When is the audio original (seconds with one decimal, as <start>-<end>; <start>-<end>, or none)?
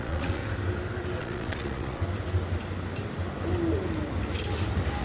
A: 0.4-1.2; 2.0-5.0